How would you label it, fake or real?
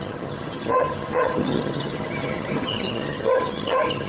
fake